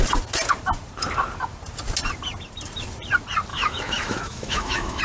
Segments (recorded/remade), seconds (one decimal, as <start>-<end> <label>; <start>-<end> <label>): 0.0-3.5 recorded; 3.5-5.0 remade